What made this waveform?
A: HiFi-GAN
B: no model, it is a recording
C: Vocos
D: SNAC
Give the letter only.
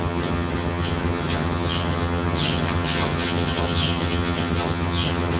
A